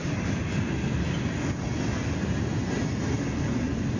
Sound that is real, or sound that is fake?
real